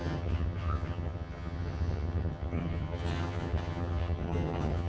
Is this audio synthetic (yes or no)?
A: yes